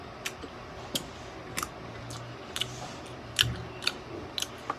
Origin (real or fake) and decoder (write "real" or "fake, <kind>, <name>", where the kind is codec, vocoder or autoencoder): real